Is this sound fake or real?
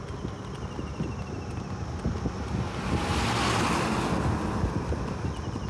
real